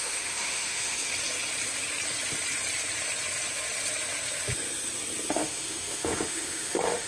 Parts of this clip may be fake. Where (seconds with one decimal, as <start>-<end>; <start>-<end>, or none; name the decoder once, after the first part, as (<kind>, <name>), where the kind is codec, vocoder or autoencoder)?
0.0-1.1 (autoencoder, DAC-VAE); 5.3-7.1